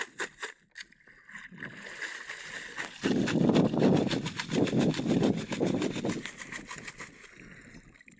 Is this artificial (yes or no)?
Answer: no